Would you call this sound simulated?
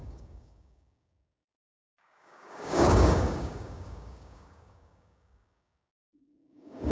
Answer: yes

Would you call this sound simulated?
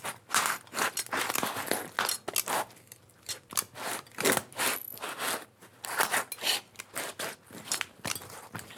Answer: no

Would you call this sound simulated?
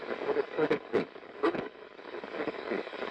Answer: yes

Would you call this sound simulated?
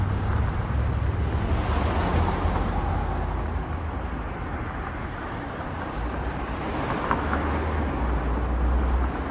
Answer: no